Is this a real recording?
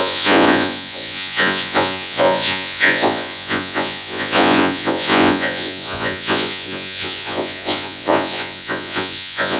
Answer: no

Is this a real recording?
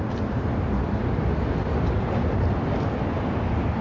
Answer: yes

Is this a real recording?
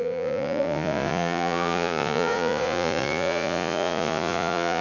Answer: no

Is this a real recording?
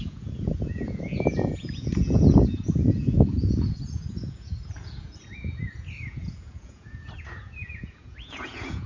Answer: no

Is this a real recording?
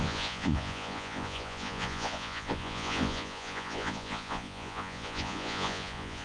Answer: no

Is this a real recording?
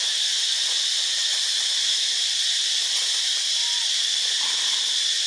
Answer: yes